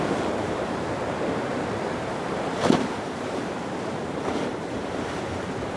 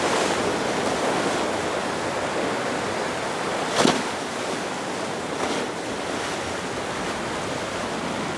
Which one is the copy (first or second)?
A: first